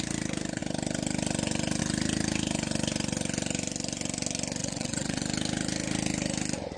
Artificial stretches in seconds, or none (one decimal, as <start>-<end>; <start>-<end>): 4.6-5.2